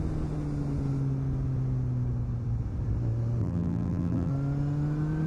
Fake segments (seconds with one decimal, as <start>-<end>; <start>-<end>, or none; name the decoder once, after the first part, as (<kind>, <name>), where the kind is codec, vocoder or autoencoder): 3.4-4.3 (vocoder, BigVGAN v2)